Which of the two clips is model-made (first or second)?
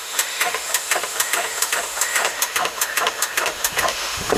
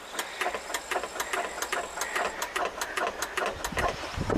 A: first